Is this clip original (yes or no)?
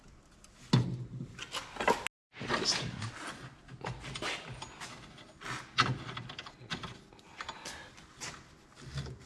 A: yes